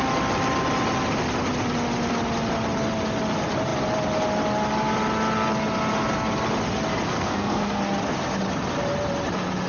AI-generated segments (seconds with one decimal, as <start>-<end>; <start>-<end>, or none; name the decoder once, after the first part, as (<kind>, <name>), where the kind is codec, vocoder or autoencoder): 7.1-7.8 (codec, SNAC)

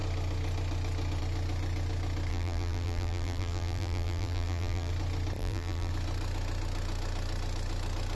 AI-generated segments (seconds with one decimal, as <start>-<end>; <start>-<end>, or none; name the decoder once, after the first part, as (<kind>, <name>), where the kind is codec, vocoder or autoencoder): 2.3-4.9 (vocoder, BigVGAN v2); 5.4-5.9

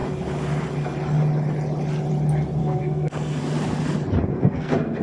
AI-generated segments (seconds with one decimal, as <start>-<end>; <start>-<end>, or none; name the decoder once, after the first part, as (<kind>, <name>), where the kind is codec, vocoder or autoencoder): 2.6-3.4 (codec, SNAC); 4.3-5.0

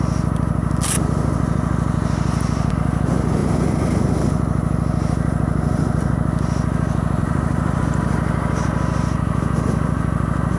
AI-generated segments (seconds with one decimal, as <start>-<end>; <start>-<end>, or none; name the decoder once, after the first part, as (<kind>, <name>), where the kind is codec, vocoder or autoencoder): 3.4-4.0 (vocoder, BigVGAN v2); 7.2-7.8

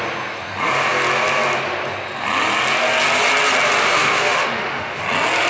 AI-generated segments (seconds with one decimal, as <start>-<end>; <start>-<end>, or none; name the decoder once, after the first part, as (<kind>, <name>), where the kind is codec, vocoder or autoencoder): 3.8-5.0 (autoencoder, DAC-VAE)